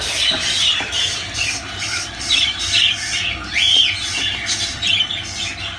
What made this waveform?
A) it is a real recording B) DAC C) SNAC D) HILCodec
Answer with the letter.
A